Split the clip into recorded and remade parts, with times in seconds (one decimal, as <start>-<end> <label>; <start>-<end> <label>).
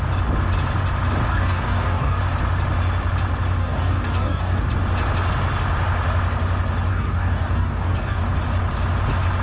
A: 0.0-1.3 recorded; 1.3-2.2 remade; 2.2-3.6 recorded; 3.6-4.6 remade; 4.6-6.9 recorded; 6.9-8.2 remade; 8.2-9.4 recorded